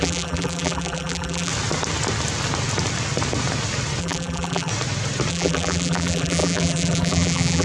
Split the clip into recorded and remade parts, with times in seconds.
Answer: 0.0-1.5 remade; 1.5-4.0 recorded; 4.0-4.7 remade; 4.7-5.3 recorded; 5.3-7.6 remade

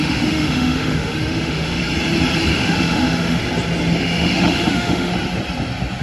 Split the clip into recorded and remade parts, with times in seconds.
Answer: 0.0-1.8 remade; 1.8-2.5 recorded; 2.5-3.4 remade; 3.4-4.0 recorded; 4.0-5.1 remade; 5.1-6.0 recorded

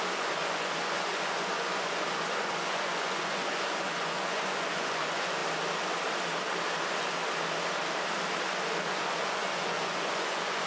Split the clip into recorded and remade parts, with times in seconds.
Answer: 0.0-5.4 remade; 5.4-6.8 recorded; 6.8-7.2 remade; 7.2-8.4 recorded; 8.4-10.7 remade